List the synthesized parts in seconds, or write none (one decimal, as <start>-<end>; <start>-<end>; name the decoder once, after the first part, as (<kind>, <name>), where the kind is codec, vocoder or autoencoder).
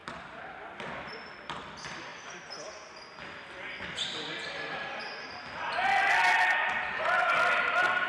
none